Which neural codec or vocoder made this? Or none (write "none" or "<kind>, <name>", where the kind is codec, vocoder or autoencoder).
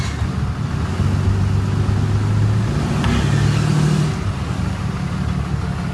none